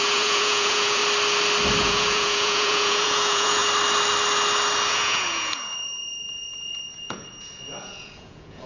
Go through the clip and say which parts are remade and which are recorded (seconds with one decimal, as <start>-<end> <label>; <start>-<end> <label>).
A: 0.0-1.0 remade; 1.0-1.8 recorded; 1.8-3.6 remade; 3.6-4.9 recorded; 4.9-8.7 remade